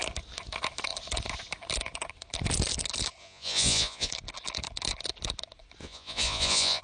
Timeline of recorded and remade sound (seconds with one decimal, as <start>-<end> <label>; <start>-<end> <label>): 0.0-3.2 recorded; 3.2-4.1 remade; 4.1-5.8 recorded; 5.8-6.8 remade